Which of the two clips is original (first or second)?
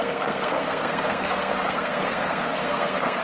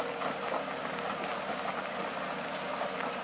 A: second